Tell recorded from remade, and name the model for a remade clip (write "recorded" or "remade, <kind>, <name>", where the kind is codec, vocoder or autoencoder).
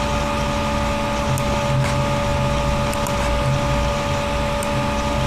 recorded